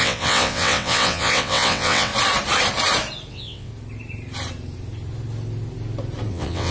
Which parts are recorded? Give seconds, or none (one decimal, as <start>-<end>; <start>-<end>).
2.1-3.3; 3.7-6.3